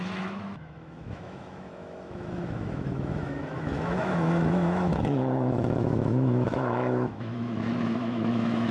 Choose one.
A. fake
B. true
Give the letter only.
A